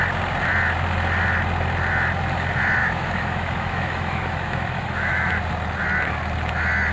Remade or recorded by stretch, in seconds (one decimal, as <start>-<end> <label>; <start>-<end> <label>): 0.0-2.8 recorded; 2.8-5.3 remade; 5.3-6.9 recorded